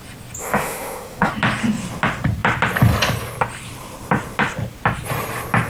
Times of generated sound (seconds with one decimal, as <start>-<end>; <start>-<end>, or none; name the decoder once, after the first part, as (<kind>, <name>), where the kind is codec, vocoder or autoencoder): 0.4-1.3 (autoencoder, DAC-VAE)